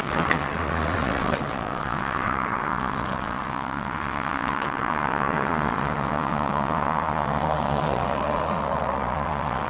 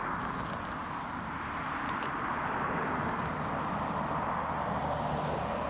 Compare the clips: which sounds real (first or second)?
second